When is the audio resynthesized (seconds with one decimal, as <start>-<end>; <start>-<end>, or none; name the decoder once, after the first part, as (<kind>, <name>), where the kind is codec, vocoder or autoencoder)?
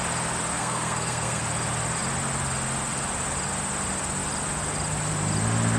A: 0.5-1.4 (codec, SNAC)